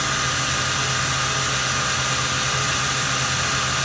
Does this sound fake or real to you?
real